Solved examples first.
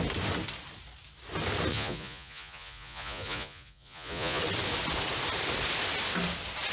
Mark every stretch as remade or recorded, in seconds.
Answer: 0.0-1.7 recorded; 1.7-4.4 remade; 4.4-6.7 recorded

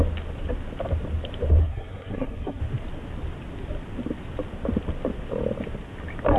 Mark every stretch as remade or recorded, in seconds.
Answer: 0.0-1.6 recorded; 1.6-2.6 remade; 2.6-6.4 recorded

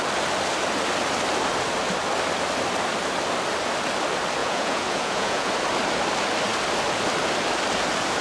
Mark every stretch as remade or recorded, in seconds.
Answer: 0.0-4.4 recorded; 4.4-5.5 remade; 5.5-8.2 recorded

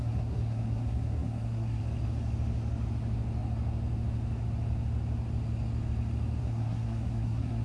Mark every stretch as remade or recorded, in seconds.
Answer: 0.0-1.8 remade; 1.8-6.4 recorded; 6.4-7.6 remade

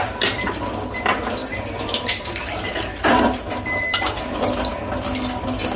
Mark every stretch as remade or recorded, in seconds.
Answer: 0.0-1.4 recorded; 1.4-4.7 remade; 4.7-5.8 recorded